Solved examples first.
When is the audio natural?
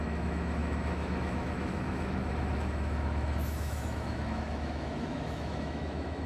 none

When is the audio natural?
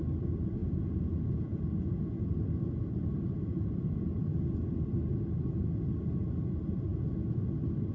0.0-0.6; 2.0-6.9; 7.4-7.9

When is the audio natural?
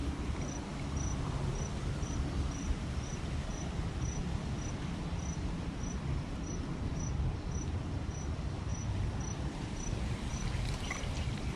0.0-11.6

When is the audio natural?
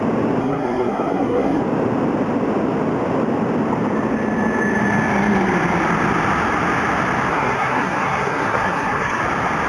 0.0-0.4; 1.6-7.3; 9.2-9.7